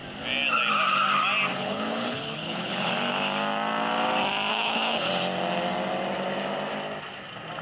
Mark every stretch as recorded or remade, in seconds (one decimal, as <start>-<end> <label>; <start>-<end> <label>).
0.0-1.5 recorded; 1.5-2.9 remade; 2.9-4.5 recorded; 4.5-5.1 remade; 5.1-7.6 recorded